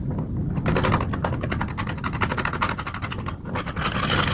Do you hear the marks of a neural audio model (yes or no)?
no